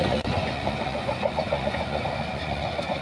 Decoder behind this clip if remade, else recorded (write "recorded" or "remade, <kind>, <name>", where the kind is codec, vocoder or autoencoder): remade, vocoder, Vocos